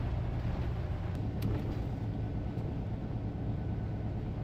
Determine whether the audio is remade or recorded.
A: recorded